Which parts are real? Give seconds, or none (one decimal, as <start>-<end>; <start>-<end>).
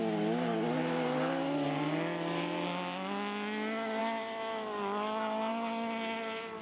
0.0-5.5